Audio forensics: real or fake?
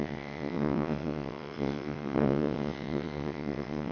fake